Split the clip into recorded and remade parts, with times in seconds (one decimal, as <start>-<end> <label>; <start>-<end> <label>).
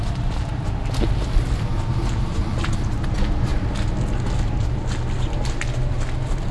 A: 0.0-6.5 recorded